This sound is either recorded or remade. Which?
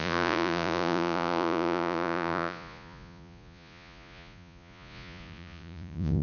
remade